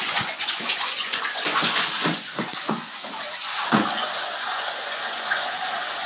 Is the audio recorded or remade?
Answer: remade